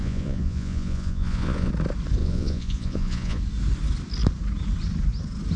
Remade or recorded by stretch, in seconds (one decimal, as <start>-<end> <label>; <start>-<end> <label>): 0.0-1.7 remade; 1.7-2.2 recorded; 2.2-3.4 remade; 3.4-5.6 recorded